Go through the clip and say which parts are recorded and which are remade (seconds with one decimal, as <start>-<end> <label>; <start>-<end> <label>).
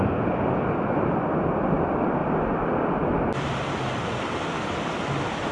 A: 0.0-5.5 recorded